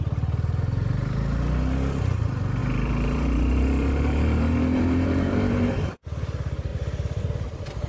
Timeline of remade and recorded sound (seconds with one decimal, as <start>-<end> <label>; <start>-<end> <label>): 0.0-2.6 recorded; 2.6-5.9 remade; 5.9-7.9 recorded